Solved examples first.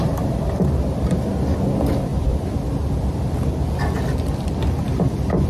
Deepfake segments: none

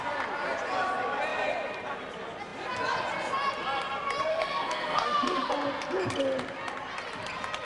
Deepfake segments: 4.3-5.5 (codec, SNAC)

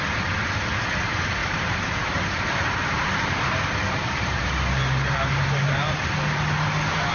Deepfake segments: 1.4-4.5 (vocoder, BigVGAN v2)

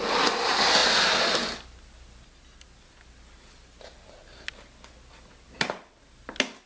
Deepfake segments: none

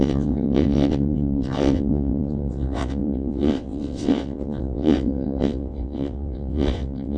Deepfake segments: 0.0-7.2 (vocoder, WaveNeXt)